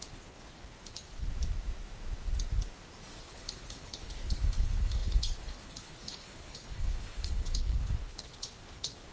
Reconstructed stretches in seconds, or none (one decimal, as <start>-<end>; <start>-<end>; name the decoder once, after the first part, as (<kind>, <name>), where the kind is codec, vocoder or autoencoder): 0.0-1.3 (codec, HILCodec); 3.2-9.1